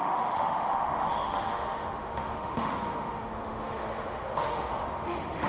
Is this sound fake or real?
fake